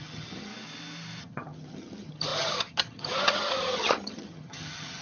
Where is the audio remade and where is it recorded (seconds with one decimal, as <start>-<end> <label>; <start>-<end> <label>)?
0.0-0.5 remade; 0.5-1.2 recorded; 1.2-5.0 remade